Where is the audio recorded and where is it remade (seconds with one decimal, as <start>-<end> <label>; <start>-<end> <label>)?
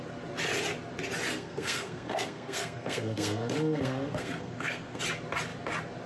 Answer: 0.0-1.3 recorded; 1.3-5.0 remade; 5.0-6.1 recorded